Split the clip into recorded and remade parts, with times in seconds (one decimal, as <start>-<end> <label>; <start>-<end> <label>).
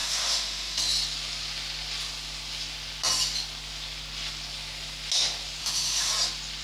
0.0-0.8 remade; 0.8-5.6 recorded; 5.6-6.1 remade; 6.1-6.6 recorded